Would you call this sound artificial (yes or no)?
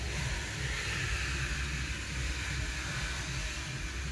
no